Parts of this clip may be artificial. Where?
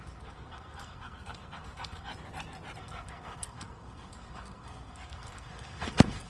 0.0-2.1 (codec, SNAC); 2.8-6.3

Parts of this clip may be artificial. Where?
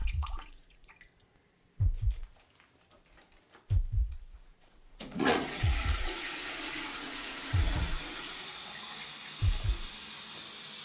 0.0-0.9 (vocoder, Vocos); 4.0-8.4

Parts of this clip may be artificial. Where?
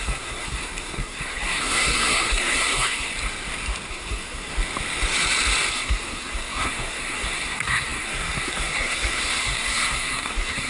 0.0-3.1 (codec, SNAC); 3.9-4.5; 5.7-10.7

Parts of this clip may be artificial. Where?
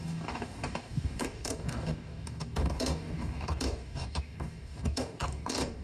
0.0-5.8 (codec, DAC)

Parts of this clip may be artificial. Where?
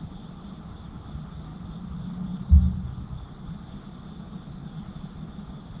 none